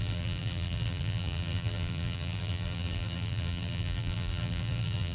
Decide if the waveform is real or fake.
fake